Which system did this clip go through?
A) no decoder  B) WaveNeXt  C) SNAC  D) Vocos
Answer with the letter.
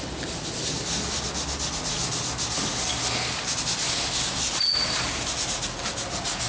A